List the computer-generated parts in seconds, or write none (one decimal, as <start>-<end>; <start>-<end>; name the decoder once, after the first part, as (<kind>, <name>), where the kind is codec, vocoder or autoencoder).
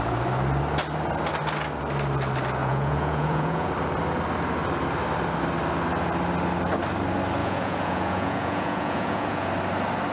2.6-3.7 (vocoder, Vocos); 7.4-9.5